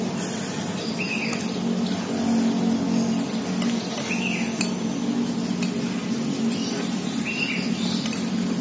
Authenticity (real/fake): real